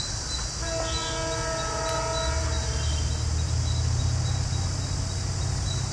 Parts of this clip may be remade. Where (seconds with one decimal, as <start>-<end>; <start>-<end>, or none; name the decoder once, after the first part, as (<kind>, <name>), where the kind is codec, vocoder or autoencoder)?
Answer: none